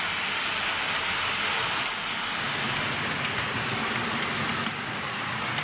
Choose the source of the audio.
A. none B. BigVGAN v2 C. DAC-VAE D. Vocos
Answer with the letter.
A